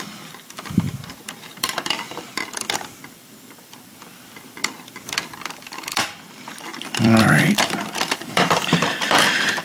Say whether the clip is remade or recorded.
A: remade